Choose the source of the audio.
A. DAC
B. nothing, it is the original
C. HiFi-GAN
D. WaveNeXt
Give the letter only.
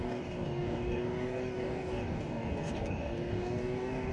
A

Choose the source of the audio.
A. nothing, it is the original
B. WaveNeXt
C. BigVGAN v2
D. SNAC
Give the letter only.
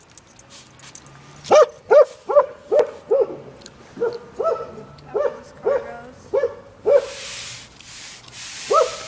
A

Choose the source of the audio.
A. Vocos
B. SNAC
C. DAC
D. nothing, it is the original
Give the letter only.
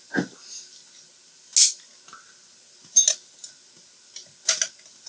D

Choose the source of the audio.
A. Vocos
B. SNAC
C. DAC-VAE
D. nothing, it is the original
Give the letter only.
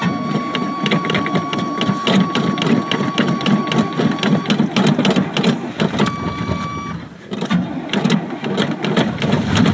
D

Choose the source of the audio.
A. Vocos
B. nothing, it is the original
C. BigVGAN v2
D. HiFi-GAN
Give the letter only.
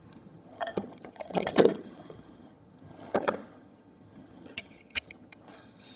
D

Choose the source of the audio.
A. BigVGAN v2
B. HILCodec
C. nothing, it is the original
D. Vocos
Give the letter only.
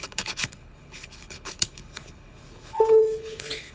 B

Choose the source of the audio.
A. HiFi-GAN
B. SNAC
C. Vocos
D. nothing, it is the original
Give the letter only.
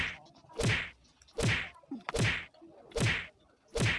D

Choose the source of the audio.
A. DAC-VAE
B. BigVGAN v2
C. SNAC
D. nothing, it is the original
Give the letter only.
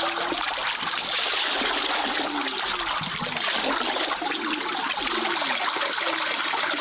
D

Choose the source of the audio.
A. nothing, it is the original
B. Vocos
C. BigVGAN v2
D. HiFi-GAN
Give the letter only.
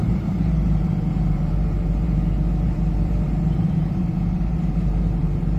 C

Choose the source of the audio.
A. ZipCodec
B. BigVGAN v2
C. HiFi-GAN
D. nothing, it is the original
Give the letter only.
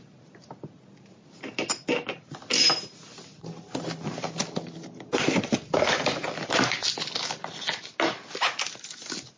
D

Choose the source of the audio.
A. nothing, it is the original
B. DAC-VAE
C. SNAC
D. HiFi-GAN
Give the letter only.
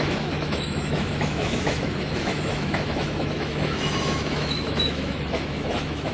B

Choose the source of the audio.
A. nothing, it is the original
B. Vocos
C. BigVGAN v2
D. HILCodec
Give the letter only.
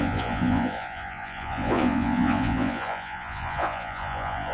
B